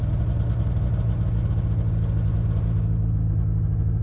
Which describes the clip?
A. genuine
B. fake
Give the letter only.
A